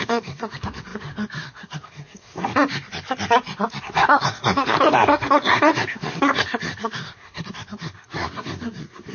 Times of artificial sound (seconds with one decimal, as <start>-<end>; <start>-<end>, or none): 0.0-2.5; 3.8-9.1